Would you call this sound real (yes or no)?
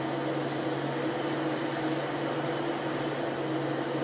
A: yes